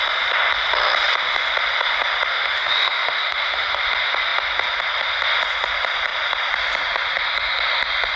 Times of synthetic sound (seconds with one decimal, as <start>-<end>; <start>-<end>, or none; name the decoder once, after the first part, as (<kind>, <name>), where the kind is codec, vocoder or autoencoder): 2.3-3.8 (autoencoder, DAC-VAE)